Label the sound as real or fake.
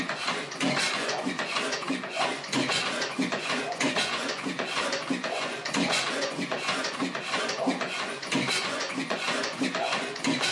fake